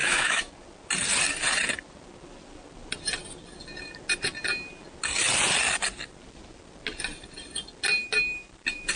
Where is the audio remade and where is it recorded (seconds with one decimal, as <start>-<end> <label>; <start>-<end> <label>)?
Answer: 0.0-0.5 remade; 0.5-9.0 recorded